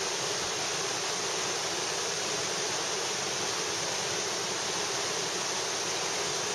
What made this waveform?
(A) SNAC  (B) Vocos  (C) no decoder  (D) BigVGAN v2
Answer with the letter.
C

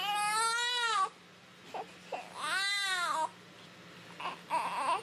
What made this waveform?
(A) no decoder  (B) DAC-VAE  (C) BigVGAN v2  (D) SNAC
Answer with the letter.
A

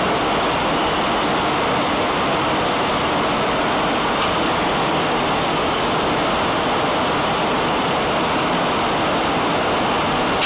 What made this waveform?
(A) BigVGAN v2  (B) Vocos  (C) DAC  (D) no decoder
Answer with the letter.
D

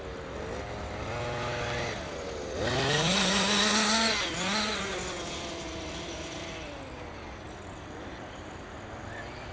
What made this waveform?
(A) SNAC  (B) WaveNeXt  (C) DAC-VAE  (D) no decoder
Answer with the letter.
D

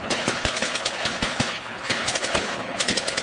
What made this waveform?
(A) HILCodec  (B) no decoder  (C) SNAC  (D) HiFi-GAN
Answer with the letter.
A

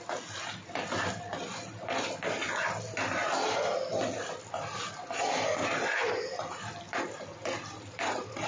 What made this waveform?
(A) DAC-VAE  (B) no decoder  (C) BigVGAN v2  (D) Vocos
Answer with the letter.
B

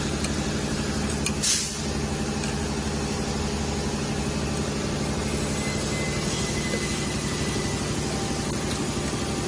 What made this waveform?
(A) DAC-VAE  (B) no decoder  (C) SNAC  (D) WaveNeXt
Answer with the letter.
B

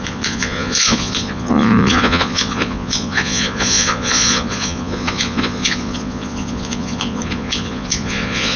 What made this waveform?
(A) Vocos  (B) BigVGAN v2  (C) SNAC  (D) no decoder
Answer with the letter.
A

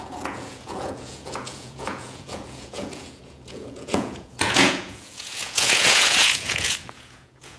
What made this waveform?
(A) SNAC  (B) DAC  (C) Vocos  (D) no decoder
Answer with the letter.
C